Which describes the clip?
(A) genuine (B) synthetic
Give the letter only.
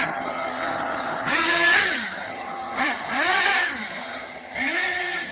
B